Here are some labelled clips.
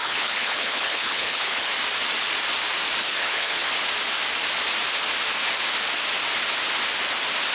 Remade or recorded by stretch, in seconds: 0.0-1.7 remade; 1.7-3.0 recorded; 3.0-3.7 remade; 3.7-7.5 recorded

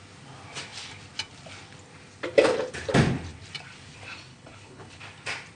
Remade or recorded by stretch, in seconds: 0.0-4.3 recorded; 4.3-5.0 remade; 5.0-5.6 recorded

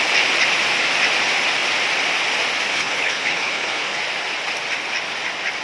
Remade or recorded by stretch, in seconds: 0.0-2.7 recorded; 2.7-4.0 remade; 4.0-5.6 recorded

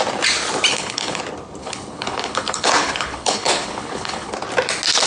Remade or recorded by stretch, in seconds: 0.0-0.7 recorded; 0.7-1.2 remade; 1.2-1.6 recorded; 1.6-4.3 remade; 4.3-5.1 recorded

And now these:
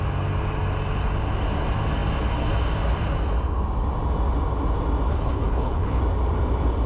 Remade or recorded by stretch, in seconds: 0.0-5.1 recorded; 5.1-6.0 remade; 6.0-6.9 recorded

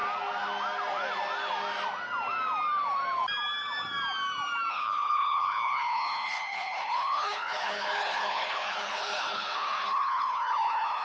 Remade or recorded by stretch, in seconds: 0.0-4.7 recorded; 4.7-11.0 remade

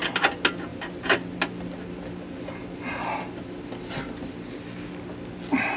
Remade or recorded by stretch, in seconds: 0.0-5.8 recorded